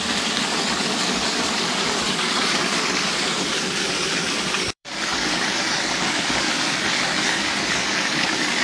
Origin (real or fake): fake